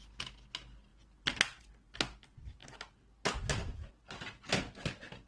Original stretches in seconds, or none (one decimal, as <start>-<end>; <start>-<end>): 0.0-5.3